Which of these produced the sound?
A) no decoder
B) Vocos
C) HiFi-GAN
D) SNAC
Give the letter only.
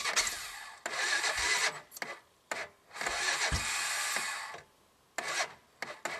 A